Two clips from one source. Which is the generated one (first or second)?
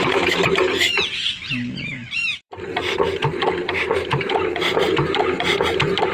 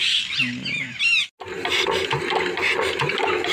first